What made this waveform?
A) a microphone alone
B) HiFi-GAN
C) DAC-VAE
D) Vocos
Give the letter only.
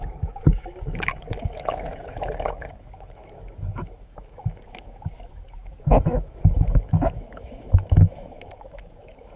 C